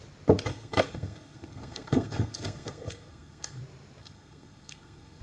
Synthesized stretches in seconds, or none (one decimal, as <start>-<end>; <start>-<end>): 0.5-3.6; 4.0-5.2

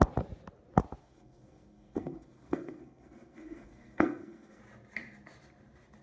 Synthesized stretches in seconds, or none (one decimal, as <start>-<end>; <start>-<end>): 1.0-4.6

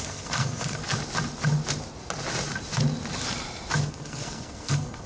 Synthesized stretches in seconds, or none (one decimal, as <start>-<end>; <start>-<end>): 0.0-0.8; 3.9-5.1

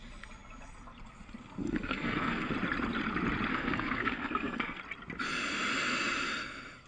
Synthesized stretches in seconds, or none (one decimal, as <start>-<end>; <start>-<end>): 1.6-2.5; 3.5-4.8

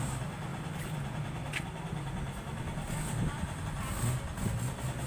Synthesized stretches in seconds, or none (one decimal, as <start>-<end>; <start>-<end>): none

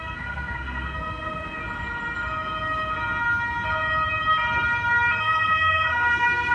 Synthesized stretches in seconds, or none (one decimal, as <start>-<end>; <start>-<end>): 0.0-1.6; 5.2-6.5

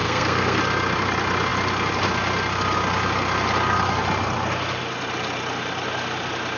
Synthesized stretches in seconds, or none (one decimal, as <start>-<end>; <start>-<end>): 0.0-0.6

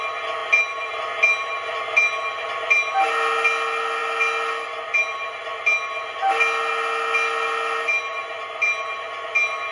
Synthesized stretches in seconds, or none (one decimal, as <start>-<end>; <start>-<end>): none